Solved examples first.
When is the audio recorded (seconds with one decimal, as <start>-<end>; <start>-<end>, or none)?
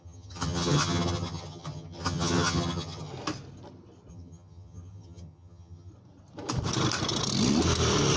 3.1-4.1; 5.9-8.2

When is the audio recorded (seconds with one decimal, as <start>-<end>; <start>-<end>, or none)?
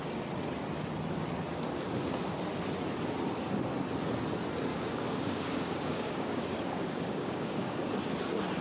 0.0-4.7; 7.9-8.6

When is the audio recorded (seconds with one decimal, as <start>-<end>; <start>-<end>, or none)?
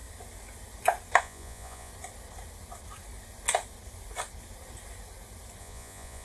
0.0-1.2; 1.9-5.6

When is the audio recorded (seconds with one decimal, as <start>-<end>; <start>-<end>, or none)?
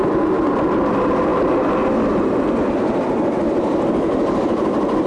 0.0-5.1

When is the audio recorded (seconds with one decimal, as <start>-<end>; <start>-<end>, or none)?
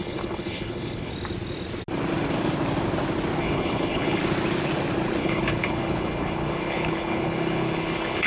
1.1-3.4; 4.2-5.2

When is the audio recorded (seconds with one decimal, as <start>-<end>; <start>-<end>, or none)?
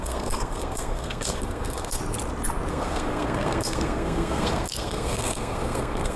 2.0-2.7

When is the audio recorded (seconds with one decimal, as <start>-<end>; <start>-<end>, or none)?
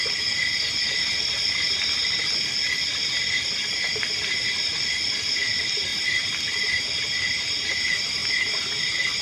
0.0-9.2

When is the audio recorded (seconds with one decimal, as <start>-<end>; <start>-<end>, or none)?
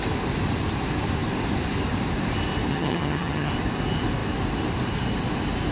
0.0-2.7; 3.5-5.7